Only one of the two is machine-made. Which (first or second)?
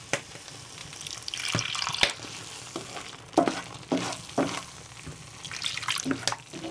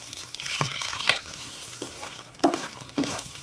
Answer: second